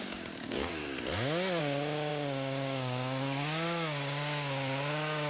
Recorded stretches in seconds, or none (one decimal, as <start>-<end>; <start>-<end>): 0.8-1.6